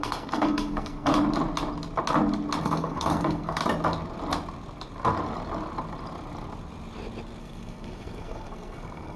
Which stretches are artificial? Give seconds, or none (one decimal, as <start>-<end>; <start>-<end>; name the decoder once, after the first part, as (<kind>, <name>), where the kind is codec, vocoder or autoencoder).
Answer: 0.0-1.1 (codec, SNAC); 2.6-3.6; 7.4-9.2